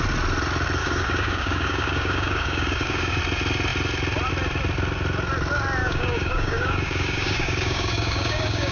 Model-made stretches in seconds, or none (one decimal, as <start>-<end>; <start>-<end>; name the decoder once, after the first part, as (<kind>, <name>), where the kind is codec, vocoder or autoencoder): 0.8-3.2 (codec, DAC); 5.8-8.7